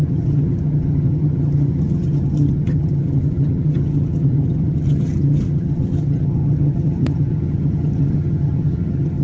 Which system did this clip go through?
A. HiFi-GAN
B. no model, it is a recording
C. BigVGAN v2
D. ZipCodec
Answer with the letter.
A